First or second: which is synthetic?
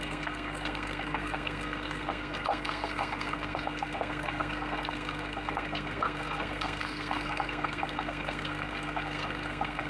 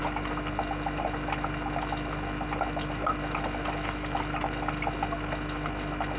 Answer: first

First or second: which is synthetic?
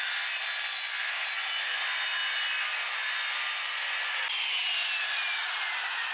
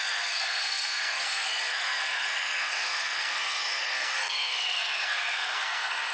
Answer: second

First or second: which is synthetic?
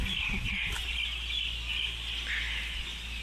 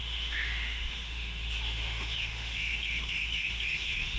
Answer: second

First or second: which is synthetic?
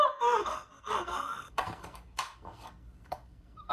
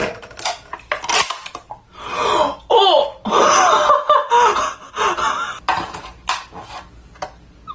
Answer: first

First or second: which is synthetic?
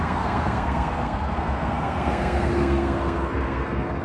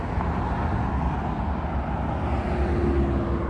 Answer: first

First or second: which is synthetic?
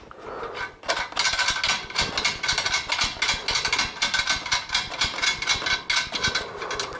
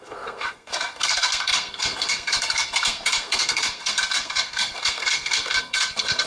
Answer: second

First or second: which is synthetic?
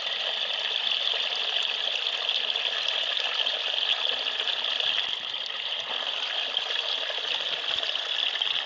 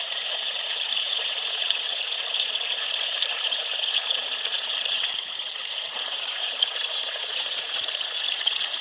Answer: second